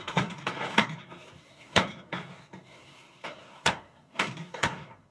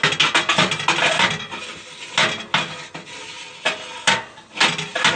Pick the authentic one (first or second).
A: second